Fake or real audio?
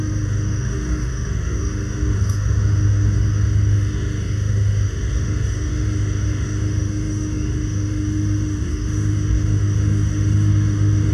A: fake